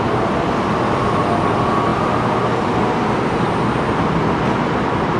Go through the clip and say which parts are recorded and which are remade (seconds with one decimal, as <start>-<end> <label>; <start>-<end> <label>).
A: 0.0-5.2 recorded